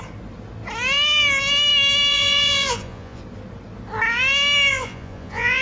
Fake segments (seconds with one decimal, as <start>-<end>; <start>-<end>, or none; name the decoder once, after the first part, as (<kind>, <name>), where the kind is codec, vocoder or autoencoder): 2.1-3.2 (vocoder, Vocos); 4.7-5.6